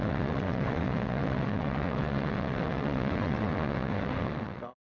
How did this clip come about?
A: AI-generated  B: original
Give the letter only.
A